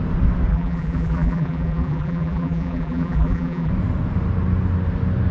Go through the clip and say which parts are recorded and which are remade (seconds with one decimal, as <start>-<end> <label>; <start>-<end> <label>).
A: 0.0-0.5 recorded; 0.5-3.7 remade; 3.7-5.3 recorded